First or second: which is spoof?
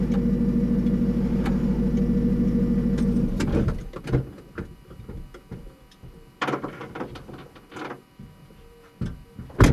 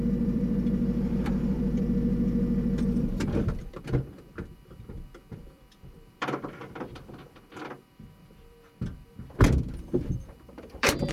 second